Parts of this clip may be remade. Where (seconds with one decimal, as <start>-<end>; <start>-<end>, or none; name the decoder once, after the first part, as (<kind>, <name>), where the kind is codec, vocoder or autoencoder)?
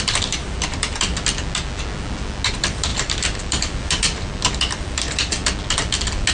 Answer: 0.0-1.1 (vocoder, BigVGAN v2); 2.5-5.4